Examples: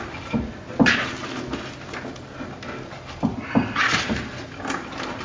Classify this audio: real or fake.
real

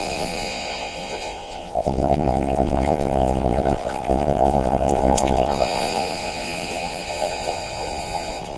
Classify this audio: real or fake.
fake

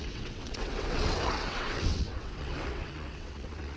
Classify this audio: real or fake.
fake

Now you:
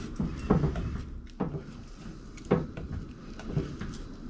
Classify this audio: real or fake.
real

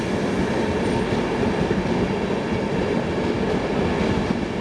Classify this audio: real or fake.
real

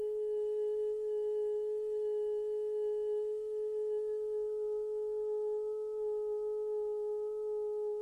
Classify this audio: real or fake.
real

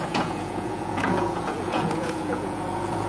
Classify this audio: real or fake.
fake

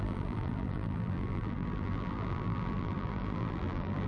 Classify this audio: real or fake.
fake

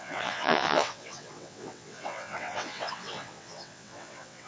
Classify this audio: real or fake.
fake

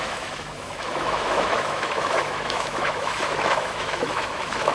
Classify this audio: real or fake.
fake